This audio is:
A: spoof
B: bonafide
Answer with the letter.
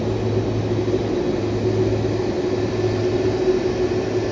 B